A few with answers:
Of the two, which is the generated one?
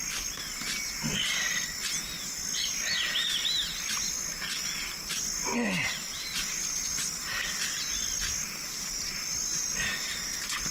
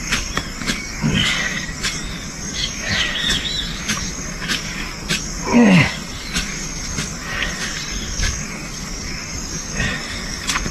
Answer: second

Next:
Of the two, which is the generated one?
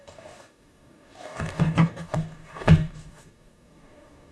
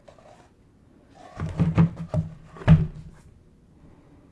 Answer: first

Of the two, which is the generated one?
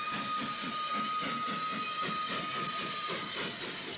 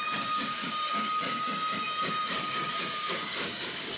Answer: second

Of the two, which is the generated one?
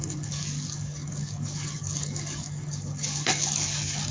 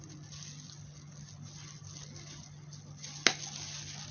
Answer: first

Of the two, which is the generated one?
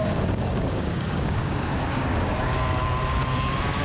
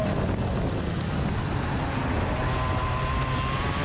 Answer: first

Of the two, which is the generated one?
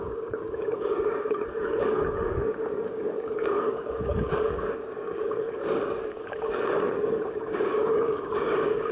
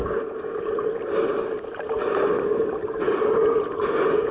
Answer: first